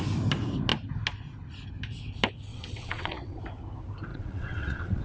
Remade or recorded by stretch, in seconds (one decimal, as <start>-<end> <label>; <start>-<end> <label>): 0.0-2.5 recorded; 2.5-3.4 remade; 3.4-4.1 recorded; 4.1-5.0 remade